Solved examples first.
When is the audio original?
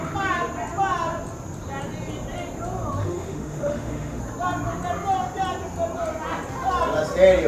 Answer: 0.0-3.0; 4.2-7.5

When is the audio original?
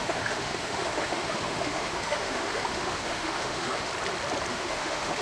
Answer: 3.9-4.5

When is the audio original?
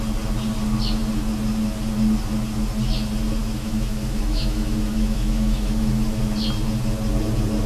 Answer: 0.0-3.4; 6.1-7.7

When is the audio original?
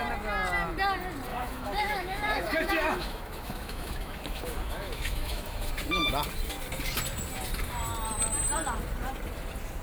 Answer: 0.0-1.3; 5.7-9.8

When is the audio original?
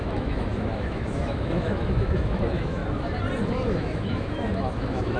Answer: 2.8-3.5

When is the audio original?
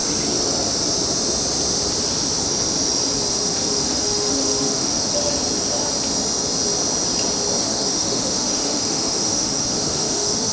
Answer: 0.0-3.3; 5.1-7.6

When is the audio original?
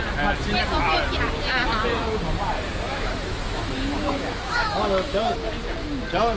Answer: 0.0-2.9; 5.3-6.4